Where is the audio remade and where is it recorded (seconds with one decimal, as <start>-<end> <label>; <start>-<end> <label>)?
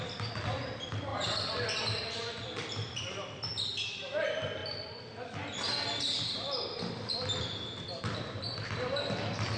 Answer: 0.0-9.6 recorded